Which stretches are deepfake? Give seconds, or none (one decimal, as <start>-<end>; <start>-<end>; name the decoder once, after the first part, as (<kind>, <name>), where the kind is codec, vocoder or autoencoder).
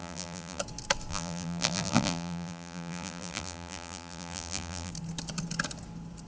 0.0-0.6 (vocoder, BigVGAN v2); 1.1-4.9